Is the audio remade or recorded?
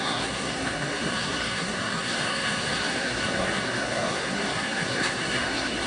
remade